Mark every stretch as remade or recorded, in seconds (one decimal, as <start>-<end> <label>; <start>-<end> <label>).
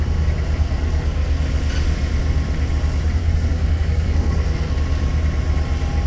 0.0-0.6 recorded; 0.6-1.4 remade; 1.4-3.2 recorded; 3.2-4.7 remade; 4.7-6.1 recorded